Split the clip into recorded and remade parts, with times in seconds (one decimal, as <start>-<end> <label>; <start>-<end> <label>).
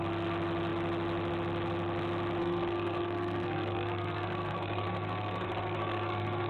0.0-2.4 recorded; 2.4-6.5 remade